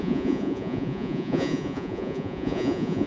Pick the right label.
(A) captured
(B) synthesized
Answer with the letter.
B